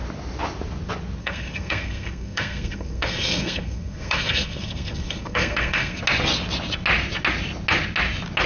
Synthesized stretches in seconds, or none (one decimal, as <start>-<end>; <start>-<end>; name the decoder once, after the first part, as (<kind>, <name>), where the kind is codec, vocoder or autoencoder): 1.2-6.0 (codec, SNAC)